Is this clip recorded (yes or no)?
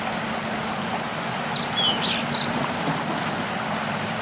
yes